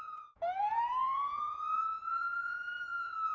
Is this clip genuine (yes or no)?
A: no